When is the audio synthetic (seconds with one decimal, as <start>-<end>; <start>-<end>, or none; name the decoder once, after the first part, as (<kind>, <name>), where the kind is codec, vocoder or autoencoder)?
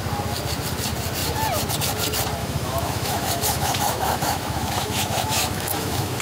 2.4-6.2 (autoencoder, DAC-VAE)